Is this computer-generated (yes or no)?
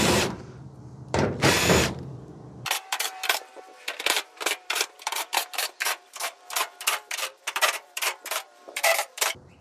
yes